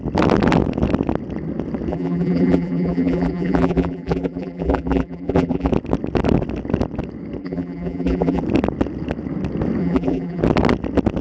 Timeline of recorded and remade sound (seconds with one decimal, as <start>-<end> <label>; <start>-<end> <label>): 0.0-1.9 recorded; 1.9-5.7 remade; 5.7-7.4 recorded; 7.4-8.4 remade; 8.4-9.8 recorded; 9.8-10.4 remade; 10.4-11.2 recorded